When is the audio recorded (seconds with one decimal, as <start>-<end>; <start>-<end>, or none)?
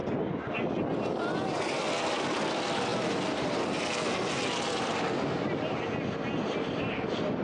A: 0.0-7.4